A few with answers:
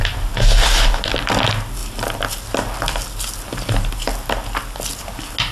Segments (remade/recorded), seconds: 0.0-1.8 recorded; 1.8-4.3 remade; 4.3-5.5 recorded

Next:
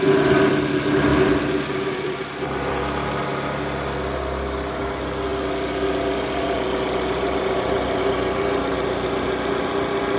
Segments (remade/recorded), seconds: 0.0-1.1 recorded; 1.1-2.7 remade; 2.7-10.2 recorded

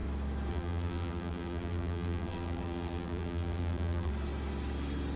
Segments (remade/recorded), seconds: 0.0-0.5 recorded; 0.5-4.1 remade; 4.1-5.2 recorded